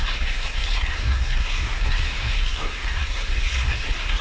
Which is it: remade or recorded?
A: remade